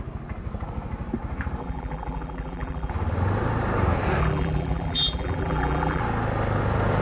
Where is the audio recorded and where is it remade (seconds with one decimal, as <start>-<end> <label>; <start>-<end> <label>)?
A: 0.0-1.6 recorded; 1.6-2.9 remade; 2.9-4.2 recorded; 4.2-6.0 remade; 6.0-7.0 recorded